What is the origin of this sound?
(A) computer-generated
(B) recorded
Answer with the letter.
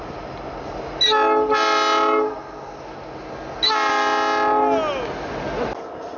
B